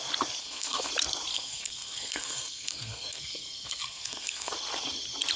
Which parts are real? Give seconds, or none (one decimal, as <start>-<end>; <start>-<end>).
0.0-0.4; 0.9-1.3; 4.5-5.4